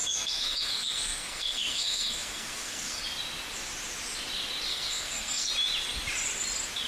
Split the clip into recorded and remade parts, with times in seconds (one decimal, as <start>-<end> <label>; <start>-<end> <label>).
0.0-3.0 remade; 3.0-4.7 recorded; 4.7-5.5 remade; 5.5-6.9 recorded

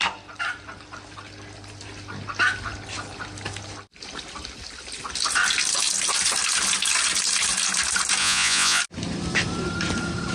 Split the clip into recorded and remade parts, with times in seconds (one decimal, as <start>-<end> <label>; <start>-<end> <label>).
0.0-8.2 recorded; 8.2-8.8 remade; 8.8-10.3 recorded